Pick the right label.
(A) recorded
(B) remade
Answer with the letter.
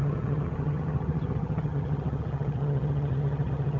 B